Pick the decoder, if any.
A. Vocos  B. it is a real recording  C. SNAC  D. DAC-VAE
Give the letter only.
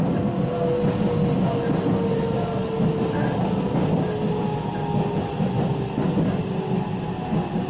B